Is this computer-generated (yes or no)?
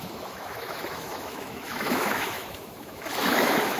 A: yes